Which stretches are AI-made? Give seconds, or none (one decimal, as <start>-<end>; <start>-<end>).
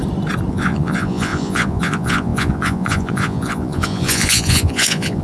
0.5-5.2